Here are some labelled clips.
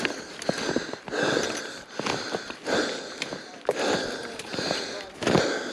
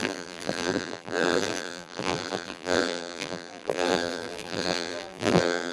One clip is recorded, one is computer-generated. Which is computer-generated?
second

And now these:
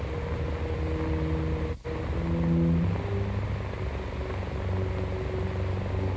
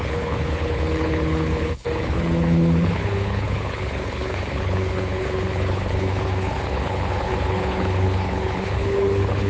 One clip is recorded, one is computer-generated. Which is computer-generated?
second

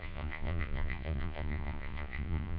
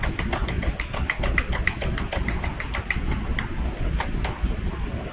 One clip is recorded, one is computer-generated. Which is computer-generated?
first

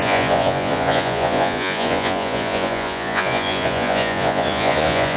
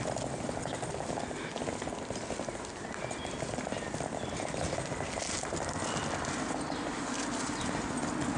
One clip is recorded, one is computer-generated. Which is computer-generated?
first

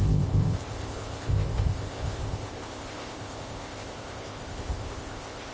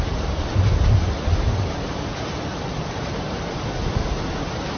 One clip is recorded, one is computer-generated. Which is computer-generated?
first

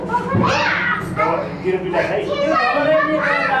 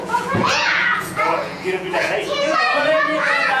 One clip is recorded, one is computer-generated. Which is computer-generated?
second